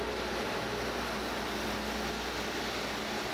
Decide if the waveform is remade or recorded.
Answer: recorded